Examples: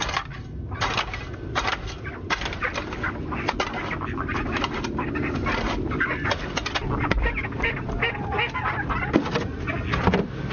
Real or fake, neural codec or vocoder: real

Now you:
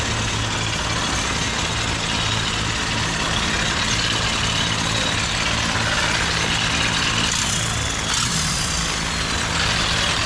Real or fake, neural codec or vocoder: real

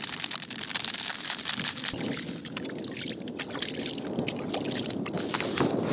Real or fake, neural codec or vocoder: real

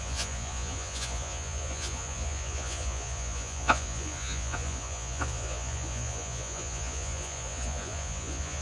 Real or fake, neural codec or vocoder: fake, vocoder, Vocos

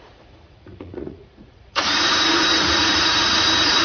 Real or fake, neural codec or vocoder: fake, vocoder, Vocos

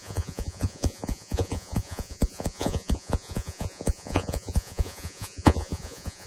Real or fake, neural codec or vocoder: fake, vocoder, Vocos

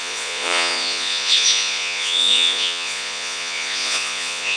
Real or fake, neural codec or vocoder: fake, vocoder, Vocos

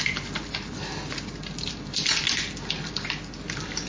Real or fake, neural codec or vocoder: real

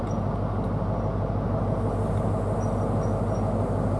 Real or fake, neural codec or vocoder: real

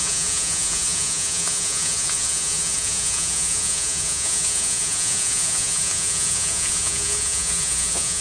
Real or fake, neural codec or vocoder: fake, vocoder, Vocos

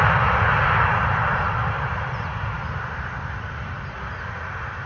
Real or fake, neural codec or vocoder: real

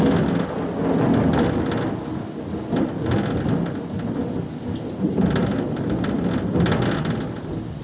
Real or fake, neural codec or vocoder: real